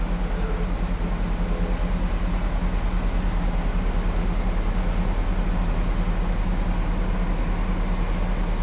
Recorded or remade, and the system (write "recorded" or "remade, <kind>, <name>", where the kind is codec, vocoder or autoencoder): recorded